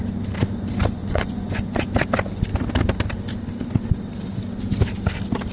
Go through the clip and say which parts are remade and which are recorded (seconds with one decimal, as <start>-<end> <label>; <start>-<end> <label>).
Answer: 0.0-1.0 recorded; 1.0-1.9 remade; 1.9-5.5 recorded